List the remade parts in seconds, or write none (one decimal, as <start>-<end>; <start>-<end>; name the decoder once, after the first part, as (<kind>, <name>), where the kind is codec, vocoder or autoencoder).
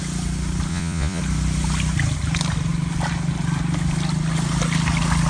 0.7-1.2 (vocoder, Vocos)